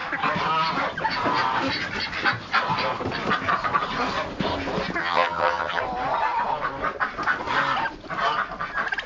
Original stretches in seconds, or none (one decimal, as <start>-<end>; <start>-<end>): 0.0-5.0; 5.8-9.1